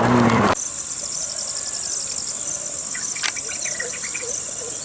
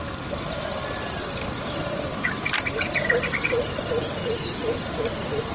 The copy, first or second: first